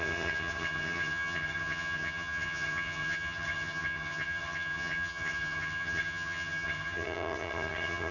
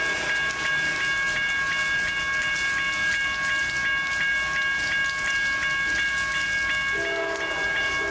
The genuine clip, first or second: second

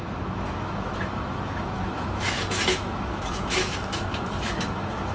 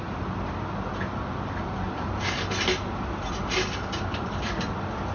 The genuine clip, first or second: second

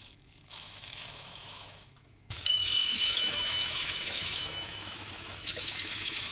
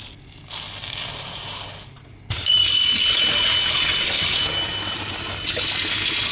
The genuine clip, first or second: second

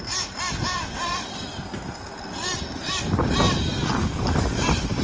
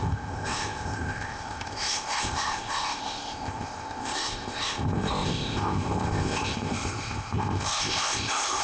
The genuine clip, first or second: first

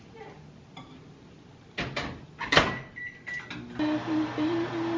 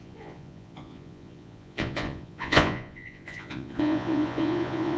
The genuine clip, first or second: first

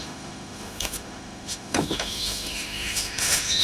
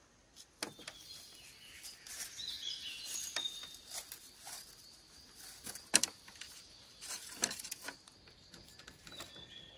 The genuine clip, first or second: second